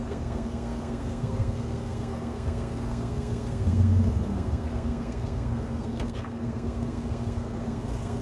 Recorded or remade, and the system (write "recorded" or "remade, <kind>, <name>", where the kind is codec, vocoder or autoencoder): remade, codec, SNAC